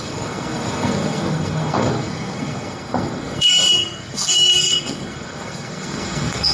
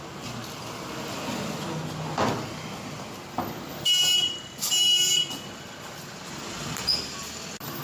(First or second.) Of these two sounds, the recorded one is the second